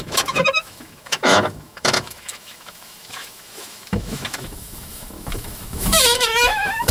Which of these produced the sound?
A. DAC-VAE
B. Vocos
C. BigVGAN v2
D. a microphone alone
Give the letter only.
A